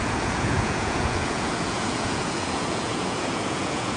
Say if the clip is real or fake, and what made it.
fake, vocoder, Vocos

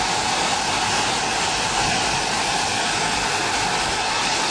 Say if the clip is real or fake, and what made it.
real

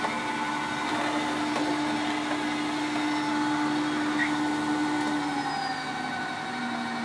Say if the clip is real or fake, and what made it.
real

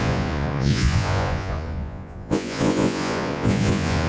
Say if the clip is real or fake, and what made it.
fake, vocoder, Vocos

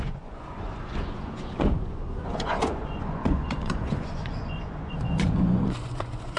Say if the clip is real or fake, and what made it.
fake, vocoder, Vocos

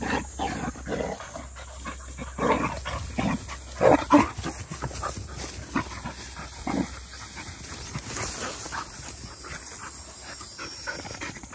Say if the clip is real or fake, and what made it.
real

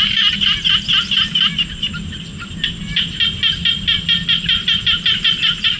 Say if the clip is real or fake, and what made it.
real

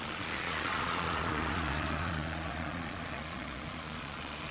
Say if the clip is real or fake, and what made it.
fake, vocoder, Vocos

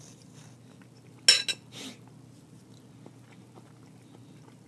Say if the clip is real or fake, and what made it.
real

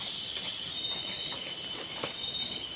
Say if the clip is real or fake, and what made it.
real